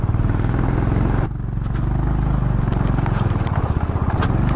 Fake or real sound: real